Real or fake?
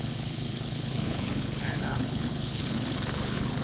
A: fake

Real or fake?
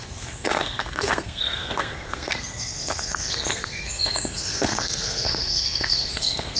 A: fake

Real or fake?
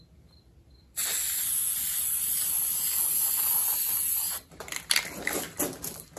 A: real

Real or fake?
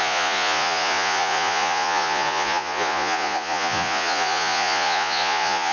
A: fake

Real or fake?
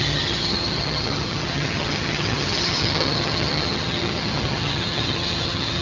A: fake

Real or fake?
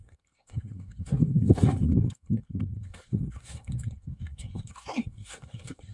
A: fake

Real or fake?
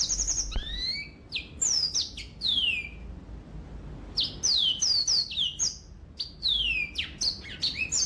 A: real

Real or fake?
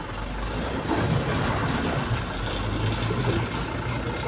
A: real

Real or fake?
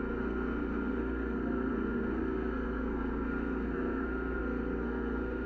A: fake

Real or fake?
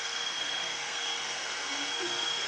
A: fake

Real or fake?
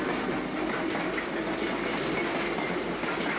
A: real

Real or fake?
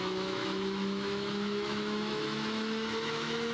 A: fake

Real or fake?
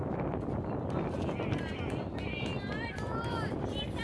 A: fake